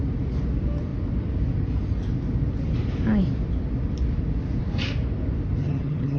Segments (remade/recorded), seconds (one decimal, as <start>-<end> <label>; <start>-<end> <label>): 0.0-5.6 recorded; 5.6-6.2 remade